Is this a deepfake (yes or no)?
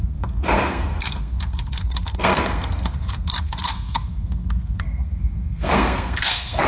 yes